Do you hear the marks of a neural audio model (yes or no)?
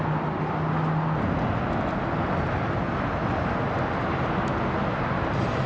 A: no